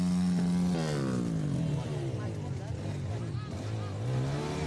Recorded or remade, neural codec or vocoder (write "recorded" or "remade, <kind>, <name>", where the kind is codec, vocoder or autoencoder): recorded